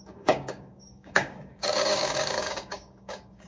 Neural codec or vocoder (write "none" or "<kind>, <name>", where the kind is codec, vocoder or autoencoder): codec, DAC